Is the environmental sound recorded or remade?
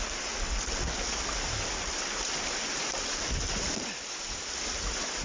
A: recorded